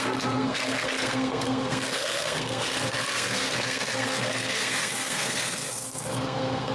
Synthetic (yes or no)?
yes